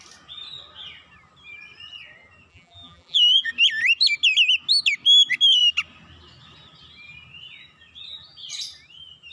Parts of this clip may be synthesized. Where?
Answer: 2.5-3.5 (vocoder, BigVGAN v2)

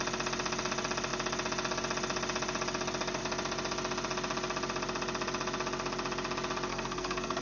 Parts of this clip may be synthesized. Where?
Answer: 6.7-7.4 (codec, SNAC)

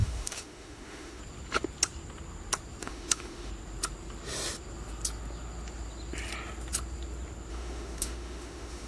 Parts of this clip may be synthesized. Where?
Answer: 0.0-1.2 (autoencoder, DAC-VAE); 2.8-3.5; 7.5-8.9